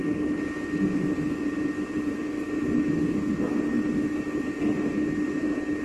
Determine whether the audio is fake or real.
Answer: real